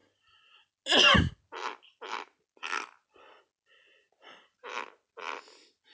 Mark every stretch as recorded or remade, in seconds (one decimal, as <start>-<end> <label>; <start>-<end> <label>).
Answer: 0.0-5.9 recorded